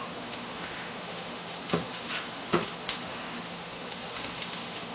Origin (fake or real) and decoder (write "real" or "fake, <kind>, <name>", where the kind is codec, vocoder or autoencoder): fake, autoencoder, DAC-VAE